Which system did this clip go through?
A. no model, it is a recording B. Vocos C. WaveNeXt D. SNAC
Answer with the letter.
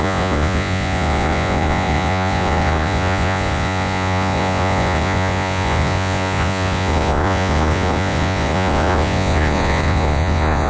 B